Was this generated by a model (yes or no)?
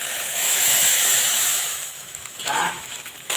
yes